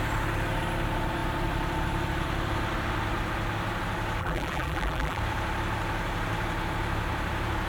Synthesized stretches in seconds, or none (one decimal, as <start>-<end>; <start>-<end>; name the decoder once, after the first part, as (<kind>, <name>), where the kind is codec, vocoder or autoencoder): 4.2-5.2 (vocoder, BigVGAN v2)